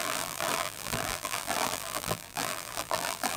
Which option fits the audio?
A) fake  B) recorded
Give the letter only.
A